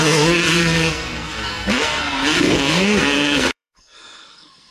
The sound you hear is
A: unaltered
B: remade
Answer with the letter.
B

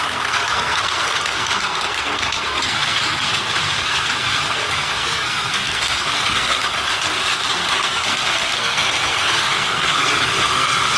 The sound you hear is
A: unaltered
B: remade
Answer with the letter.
B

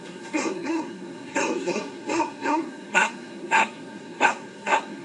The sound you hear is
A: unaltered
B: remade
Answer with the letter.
B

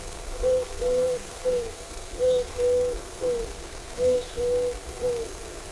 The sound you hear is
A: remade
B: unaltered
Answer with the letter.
A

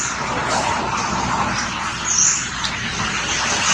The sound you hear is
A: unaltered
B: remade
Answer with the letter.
A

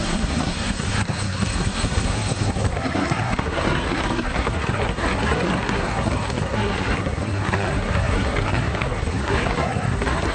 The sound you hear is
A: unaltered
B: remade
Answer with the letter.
B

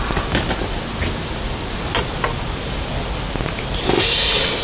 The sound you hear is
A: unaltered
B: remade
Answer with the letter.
A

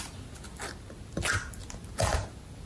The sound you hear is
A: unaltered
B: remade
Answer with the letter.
A